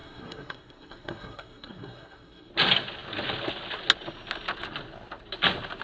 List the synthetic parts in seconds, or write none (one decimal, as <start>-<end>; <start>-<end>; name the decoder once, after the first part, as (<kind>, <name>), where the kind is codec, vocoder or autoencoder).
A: 0.0-2.5 (codec, SNAC)